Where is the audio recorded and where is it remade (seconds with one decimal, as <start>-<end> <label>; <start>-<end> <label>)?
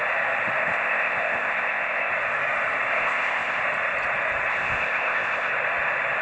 0.0-0.6 recorded; 0.6-2.1 remade; 2.1-2.9 recorded; 2.9-3.6 remade; 3.6-4.5 recorded; 4.5-5.5 remade; 5.5-6.2 recorded